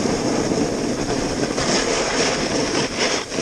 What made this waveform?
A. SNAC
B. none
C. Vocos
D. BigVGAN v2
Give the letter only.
B